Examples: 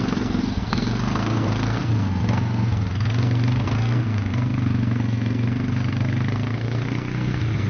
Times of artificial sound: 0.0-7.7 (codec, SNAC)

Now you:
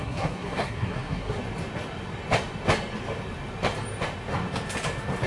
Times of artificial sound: 0.0-1.4 (codec, SNAC)

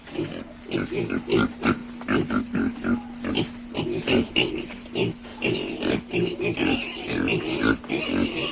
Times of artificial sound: none

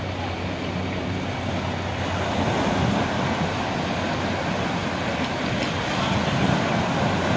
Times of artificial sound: 0.0-4.8 (vocoder, BigVGAN v2); 5.5-7.4

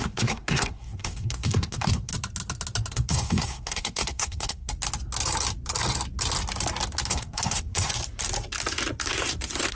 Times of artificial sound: 0.0-2.1 (codec, SNAC); 2.9-4.7; 7.1-7.9

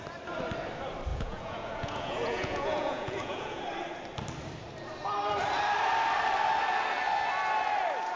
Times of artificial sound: 1.1-3.6 (vocoder, Vocos)